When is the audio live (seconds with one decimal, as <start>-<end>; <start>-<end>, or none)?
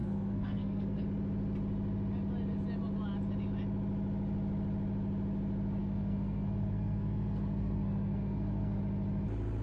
1.0-5.8; 8.8-9.6